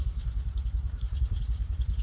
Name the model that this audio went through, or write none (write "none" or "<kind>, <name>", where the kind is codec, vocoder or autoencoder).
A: vocoder, BigVGAN v2